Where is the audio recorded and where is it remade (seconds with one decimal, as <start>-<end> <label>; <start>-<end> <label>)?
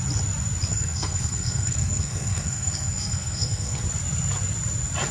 0.0-0.7 recorded; 0.7-3.8 remade; 3.8-5.1 recorded